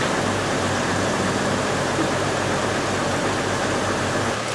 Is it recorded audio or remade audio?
remade